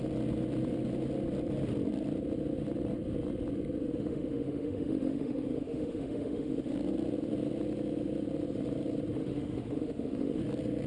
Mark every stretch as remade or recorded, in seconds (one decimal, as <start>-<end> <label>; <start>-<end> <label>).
0.0-3.8 recorded; 3.8-6.7 remade; 6.7-9.2 recorded; 9.2-10.4 remade; 10.4-10.9 recorded